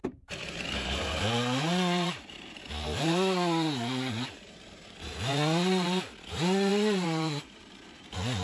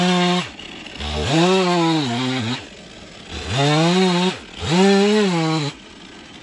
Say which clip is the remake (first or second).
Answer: first